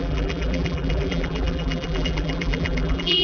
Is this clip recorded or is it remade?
remade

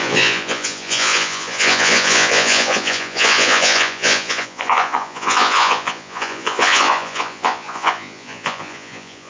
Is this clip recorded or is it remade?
remade